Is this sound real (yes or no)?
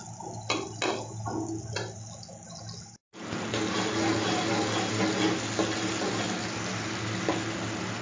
yes